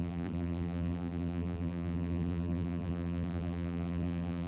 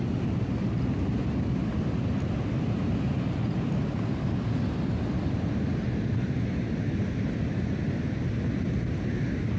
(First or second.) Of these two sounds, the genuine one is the second